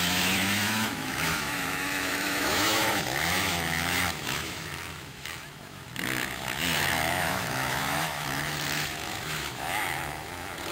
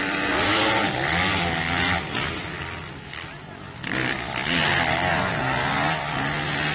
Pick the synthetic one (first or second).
first